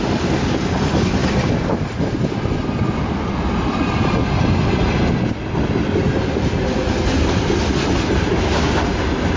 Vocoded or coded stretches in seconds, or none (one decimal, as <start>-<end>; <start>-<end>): none